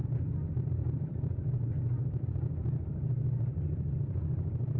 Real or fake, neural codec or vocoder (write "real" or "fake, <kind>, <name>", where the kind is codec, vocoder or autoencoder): fake, vocoder, BigVGAN v2